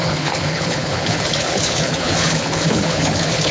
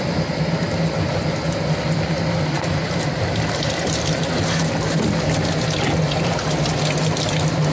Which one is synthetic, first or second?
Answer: first